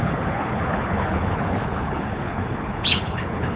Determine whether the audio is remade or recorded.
remade